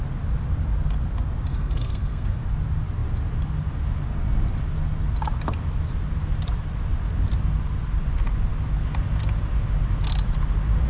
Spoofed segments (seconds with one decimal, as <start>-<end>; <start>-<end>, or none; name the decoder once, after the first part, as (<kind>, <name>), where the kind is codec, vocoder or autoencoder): 1.5-2.4 (codec, SNAC)